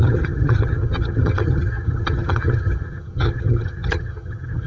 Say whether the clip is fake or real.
fake